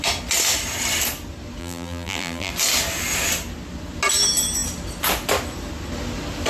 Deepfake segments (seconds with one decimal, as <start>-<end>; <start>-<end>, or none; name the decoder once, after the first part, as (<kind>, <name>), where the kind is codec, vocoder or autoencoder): 1.6-2.5 (vocoder, BigVGAN v2)